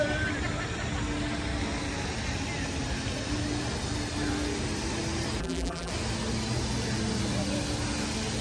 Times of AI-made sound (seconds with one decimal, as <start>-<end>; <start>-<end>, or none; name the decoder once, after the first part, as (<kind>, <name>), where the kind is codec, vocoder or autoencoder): 5.4-5.9 (vocoder, BigVGAN v2)